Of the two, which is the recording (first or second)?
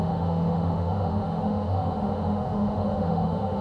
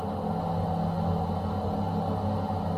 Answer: second